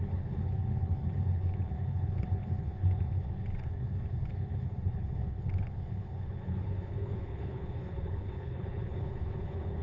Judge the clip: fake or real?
fake